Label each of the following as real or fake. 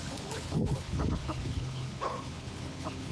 fake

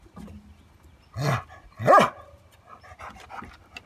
real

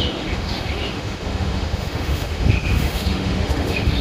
fake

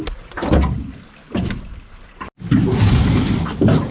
real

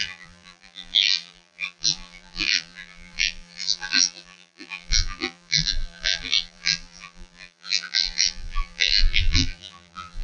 fake